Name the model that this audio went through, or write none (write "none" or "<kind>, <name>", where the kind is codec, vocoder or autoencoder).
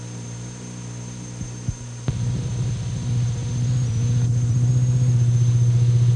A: none